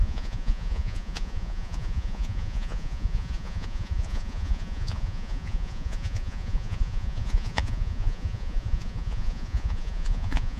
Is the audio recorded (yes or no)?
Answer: no